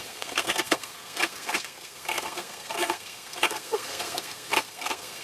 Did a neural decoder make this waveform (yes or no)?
yes